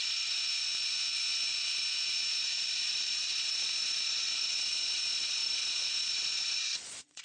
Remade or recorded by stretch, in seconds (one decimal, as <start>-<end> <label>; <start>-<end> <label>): 0.0-0.4 remade; 0.4-2.4 recorded; 2.4-7.2 remade